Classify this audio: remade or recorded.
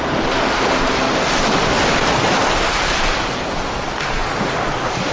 recorded